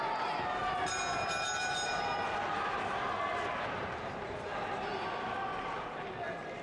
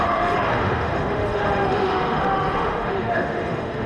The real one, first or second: first